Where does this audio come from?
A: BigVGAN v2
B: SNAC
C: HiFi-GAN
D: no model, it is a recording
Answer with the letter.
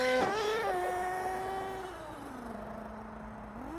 A